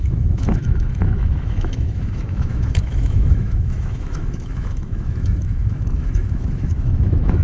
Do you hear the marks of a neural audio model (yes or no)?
yes